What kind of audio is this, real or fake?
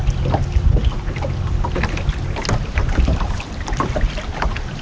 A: real